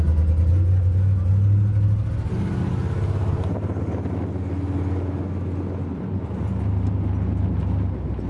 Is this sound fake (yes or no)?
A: no